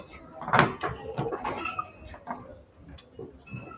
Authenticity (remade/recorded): recorded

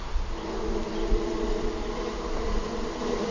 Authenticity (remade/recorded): recorded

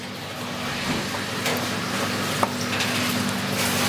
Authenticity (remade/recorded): recorded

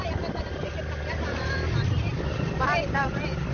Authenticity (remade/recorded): recorded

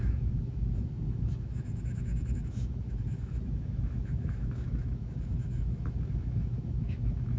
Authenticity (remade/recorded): remade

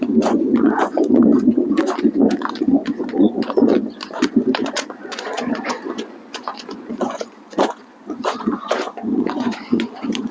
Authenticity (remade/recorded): remade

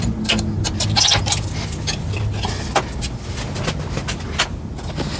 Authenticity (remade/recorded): recorded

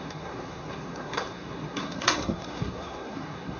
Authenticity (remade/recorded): remade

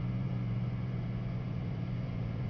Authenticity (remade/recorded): remade